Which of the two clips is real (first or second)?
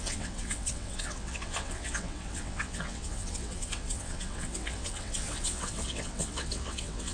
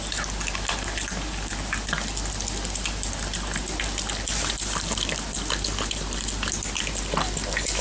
second